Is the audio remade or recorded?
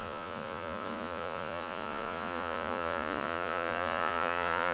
remade